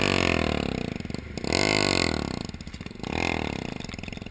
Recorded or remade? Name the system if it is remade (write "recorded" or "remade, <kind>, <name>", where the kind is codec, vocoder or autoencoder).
recorded